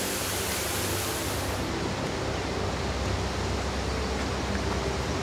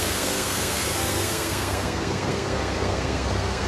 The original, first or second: first